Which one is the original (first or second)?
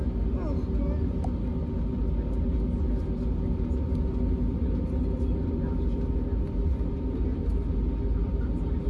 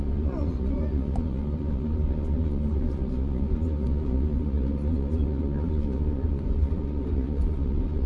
first